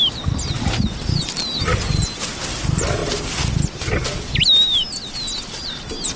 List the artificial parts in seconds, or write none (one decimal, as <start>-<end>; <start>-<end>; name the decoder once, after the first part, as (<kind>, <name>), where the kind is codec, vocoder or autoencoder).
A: none